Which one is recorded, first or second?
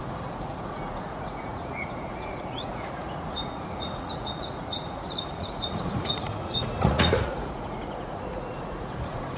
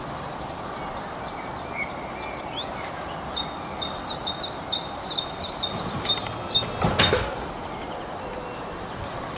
second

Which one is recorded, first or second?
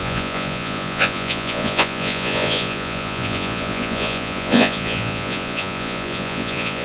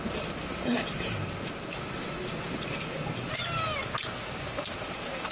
second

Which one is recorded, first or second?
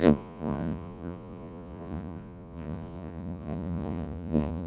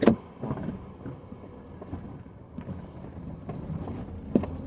second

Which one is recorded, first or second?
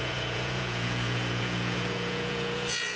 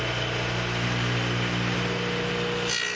second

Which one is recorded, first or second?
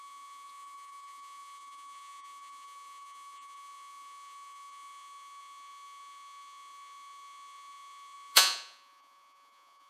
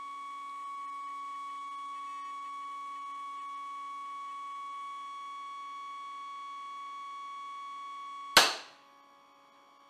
second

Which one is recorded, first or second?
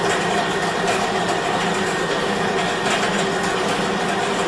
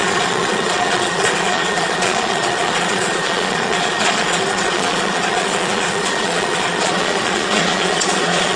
first